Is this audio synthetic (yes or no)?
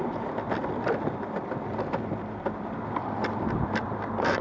yes